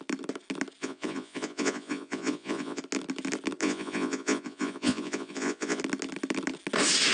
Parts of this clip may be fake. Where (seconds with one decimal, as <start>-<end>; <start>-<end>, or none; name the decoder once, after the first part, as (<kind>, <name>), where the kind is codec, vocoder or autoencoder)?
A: 0.8-2.8 (vocoder, Vocos); 3.6-5.8